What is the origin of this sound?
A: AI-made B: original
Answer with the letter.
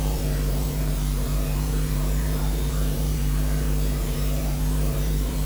A